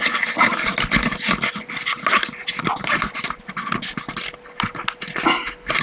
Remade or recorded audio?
recorded